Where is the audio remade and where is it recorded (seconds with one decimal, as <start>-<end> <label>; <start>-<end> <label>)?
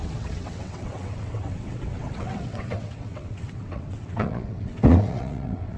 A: 0.0-5.8 remade